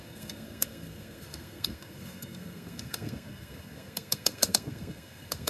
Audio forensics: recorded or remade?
remade